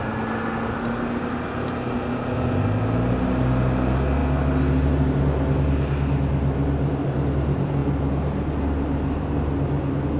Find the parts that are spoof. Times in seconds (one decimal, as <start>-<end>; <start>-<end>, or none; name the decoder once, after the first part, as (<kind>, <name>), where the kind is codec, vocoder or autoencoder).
none